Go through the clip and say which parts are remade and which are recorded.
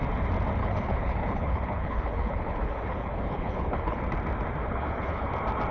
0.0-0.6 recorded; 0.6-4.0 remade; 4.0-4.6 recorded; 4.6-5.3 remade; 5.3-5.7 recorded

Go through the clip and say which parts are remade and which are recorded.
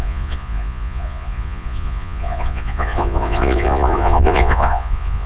0.0-5.3 remade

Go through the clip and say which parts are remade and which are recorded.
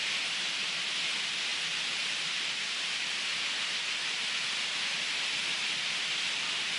0.0-6.8 recorded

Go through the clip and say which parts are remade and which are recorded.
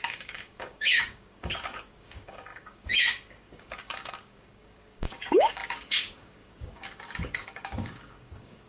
0.0-8.7 remade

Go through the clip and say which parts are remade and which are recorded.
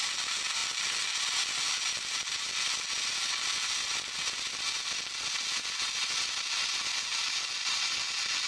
0.0-8.5 recorded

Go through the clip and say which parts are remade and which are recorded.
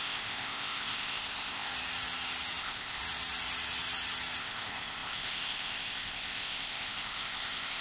0.0-1.7 remade; 1.7-2.6 recorded; 2.6-3.0 remade; 3.0-4.4 recorded; 4.4-7.8 remade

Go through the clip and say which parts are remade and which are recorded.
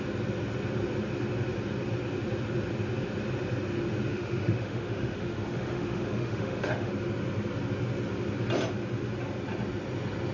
0.0-4.1 recorded; 4.1-6.9 remade; 6.9-10.3 recorded